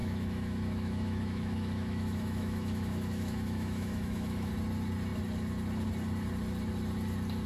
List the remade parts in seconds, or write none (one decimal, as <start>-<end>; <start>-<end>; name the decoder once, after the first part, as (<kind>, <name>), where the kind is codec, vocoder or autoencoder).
0.0-4.5 (autoencoder, DAC-VAE)